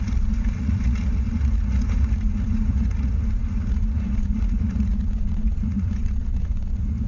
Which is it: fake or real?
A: fake